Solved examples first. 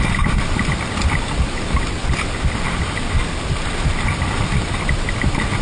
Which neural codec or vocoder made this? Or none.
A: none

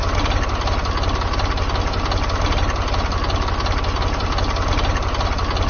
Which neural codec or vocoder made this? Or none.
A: none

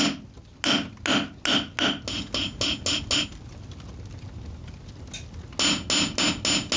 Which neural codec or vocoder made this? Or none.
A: none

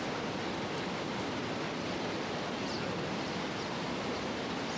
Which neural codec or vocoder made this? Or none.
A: none